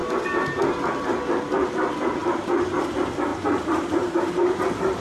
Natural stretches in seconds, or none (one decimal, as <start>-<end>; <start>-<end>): 0.0-2.2; 2.9-3.3; 4.6-5.0